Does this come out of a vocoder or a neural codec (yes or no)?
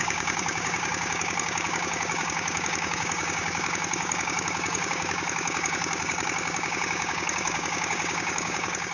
yes